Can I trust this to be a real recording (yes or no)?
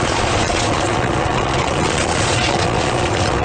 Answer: no